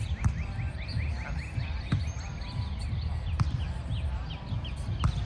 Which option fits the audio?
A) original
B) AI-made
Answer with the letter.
A